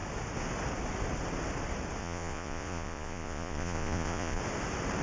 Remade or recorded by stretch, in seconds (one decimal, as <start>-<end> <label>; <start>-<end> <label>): 0.0-2.0 recorded; 2.0-4.4 remade; 4.4-5.0 recorded